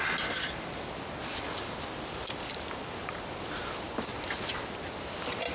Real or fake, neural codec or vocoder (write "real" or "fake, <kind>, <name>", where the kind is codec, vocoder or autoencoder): real